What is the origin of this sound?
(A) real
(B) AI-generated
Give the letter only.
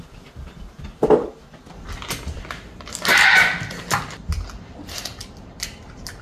A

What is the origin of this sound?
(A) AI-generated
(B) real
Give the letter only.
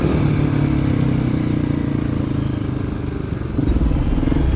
B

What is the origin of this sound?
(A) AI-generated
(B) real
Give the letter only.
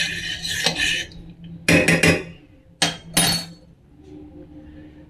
B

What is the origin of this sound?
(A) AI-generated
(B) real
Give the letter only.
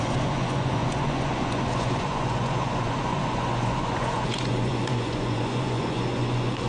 A